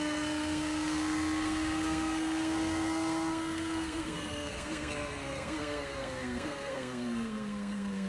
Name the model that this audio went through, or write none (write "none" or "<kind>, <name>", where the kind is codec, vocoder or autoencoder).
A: codec, SNAC